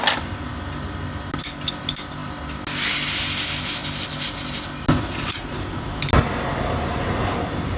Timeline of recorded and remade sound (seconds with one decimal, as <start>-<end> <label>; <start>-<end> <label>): 0.0-7.8 recorded